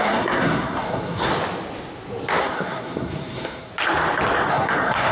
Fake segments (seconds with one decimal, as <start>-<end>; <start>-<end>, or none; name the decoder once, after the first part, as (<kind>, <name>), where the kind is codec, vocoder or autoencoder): 0.0-1.3 (codec, SNAC); 2.4-3.7; 4.5-5.1